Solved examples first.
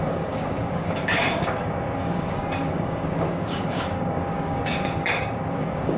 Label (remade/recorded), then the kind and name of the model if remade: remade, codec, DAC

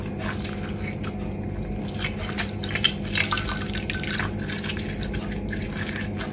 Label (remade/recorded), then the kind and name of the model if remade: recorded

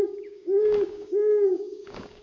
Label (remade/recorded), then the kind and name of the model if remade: remade, codec, DAC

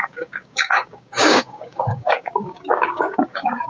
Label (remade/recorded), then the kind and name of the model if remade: remade, codec, DAC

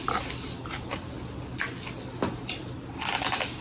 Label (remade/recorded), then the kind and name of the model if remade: recorded